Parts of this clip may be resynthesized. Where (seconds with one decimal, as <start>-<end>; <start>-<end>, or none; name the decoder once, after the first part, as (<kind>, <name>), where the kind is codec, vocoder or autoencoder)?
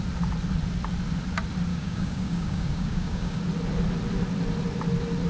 1.7-3.4 (codec, DAC)